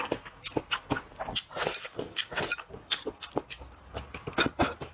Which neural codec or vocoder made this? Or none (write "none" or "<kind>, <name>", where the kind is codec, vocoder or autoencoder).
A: none